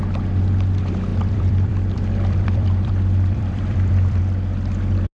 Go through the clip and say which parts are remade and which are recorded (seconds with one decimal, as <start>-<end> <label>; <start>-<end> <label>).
0.0-1.1 recorded; 1.1-4.2 remade; 4.2-5.2 recorded